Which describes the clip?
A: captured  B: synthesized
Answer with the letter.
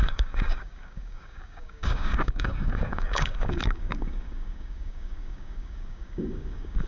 B